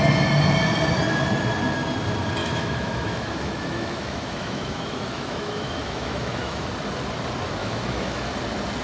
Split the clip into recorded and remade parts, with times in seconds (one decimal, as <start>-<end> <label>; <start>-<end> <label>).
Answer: 0.0-2.4 recorded; 2.4-6.7 remade; 6.7-7.6 recorded; 7.6-8.3 remade; 8.3-8.8 recorded